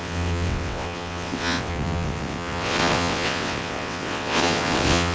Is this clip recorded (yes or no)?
no